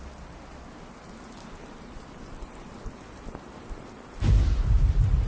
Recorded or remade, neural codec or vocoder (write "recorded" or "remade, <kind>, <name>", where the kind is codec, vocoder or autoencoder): recorded